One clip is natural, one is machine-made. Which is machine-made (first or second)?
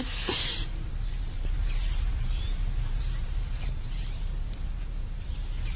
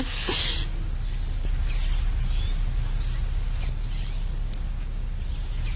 first